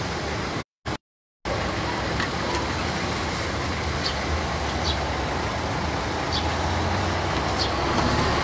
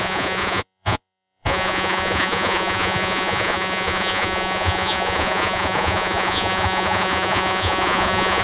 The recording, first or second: first